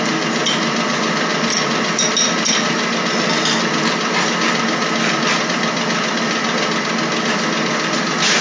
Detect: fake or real real